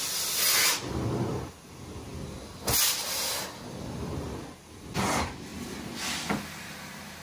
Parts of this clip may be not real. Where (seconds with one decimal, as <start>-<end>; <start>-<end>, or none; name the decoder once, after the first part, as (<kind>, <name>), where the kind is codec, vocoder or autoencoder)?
none

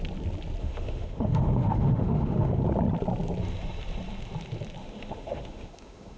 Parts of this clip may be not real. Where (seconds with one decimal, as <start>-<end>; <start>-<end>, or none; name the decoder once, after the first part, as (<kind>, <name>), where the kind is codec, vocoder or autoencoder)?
0.6-2.6 (autoencoder, DAC-VAE); 4.8-6.2

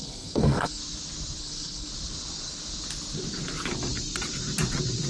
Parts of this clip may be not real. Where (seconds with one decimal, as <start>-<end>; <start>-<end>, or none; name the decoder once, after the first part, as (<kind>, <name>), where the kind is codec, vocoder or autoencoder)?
0.0-0.8 (codec, SNAC); 1.4-1.9